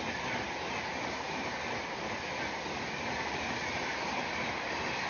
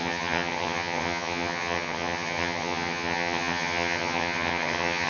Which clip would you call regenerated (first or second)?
second